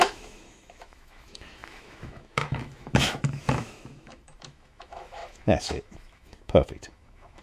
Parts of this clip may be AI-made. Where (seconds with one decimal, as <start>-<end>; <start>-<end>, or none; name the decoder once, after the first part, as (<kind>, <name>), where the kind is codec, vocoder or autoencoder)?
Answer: 0.0-7.4 (autoencoder, DAC-VAE)